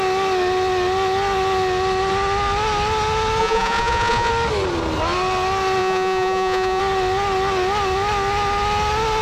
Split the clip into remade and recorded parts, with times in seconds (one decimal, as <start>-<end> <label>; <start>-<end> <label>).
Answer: 0.0-3.4 recorded; 3.4-4.3 remade; 4.3-5.8 recorded; 5.8-6.8 remade; 6.8-9.2 recorded